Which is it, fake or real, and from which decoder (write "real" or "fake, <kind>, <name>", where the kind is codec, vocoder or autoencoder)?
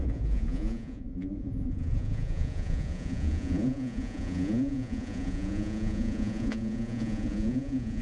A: fake, vocoder, Vocos